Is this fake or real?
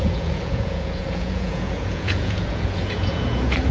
fake